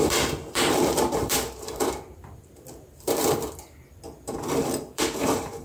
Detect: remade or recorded remade